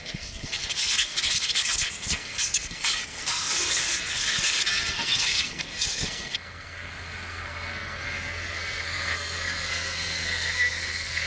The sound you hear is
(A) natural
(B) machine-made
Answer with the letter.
B